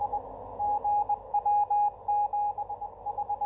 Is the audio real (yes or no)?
yes